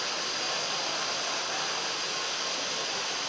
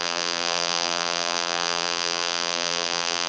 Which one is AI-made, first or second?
second